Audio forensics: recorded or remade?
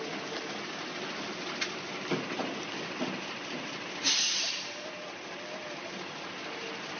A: recorded